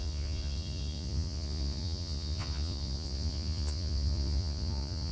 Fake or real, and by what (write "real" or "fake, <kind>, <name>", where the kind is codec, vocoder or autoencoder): fake, vocoder, Vocos